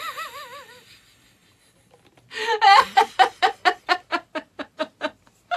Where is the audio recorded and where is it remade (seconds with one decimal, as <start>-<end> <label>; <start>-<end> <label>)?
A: 0.0-1.4 recorded; 1.4-4.8 remade; 4.8-5.6 recorded